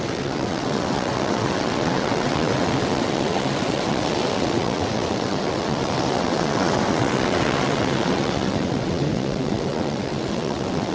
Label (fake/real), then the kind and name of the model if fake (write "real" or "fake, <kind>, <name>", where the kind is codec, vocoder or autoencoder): fake, vocoder, WaveNeXt